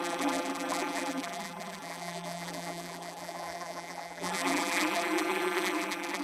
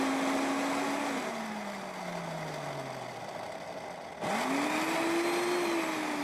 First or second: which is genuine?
second